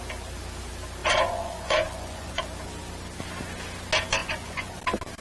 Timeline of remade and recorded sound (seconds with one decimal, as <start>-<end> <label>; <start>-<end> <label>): 0.0-1.0 recorded; 1.0-2.4 remade; 2.4-4.2 recorded; 4.2-4.8 remade; 4.8-5.2 recorded